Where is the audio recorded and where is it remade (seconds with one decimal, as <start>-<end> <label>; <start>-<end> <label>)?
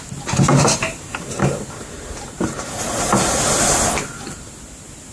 0.0-0.5 recorded; 0.5-3.6 remade; 3.6-5.1 recorded